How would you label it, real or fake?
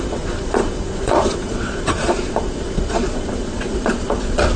fake